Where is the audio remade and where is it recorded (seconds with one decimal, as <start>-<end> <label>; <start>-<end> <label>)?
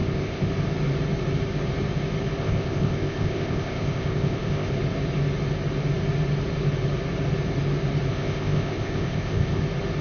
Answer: 0.0-0.5 remade; 0.5-2.4 recorded; 2.4-4.7 remade; 4.7-8.1 recorded; 8.1-9.6 remade; 9.6-10.0 recorded